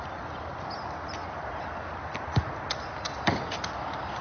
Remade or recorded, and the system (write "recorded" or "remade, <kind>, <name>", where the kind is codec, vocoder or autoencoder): recorded